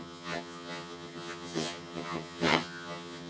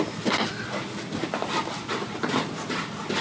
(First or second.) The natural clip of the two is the second